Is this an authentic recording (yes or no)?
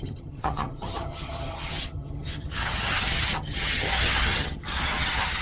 no